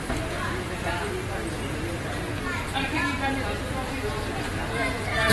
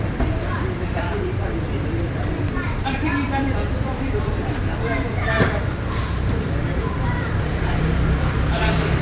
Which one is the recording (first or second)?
first